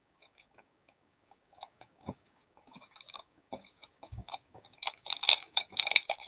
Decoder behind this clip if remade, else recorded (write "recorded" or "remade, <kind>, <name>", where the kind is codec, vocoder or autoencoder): remade, codec, DAC